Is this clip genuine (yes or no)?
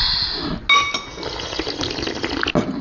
yes